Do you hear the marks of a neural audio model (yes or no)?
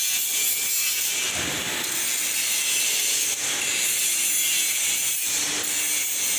no